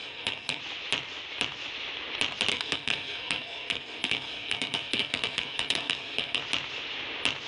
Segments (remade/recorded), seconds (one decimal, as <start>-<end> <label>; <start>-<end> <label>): 0.0-0.6 remade; 0.6-2.5 recorded; 2.5-6.4 remade; 6.4-7.5 recorded